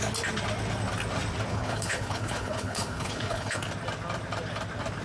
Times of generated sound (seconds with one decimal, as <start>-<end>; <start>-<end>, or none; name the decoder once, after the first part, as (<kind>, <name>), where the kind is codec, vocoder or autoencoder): 1.5-3.7 (codec, HILCodec)